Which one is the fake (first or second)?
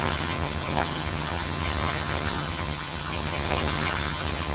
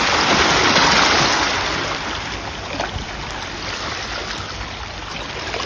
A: first